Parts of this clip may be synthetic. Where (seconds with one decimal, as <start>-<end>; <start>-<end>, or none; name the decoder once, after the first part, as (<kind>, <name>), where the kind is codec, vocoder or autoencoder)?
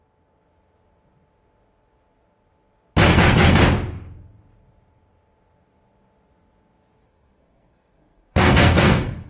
3.1-3.6 (codec, SNAC); 7.0-9.3